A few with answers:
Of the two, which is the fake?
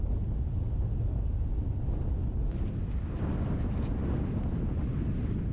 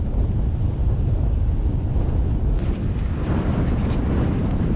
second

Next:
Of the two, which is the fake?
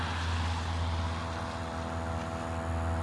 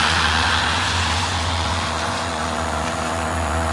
second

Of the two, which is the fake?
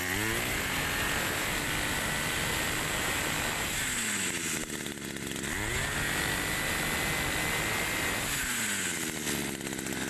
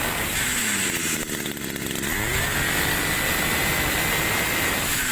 second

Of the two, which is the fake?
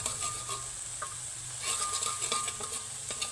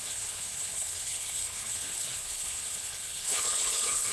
second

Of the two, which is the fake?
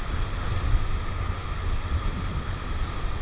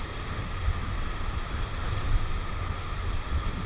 second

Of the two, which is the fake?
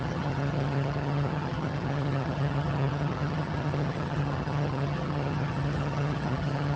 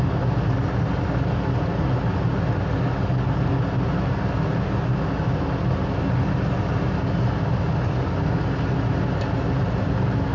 first